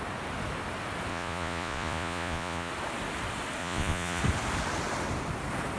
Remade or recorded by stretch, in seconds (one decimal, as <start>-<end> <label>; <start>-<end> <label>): 0.0-1.1 recorded; 1.1-2.7 remade; 2.7-3.6 recorded; 3.6-4.2 remade; 4.2-5.8 recorded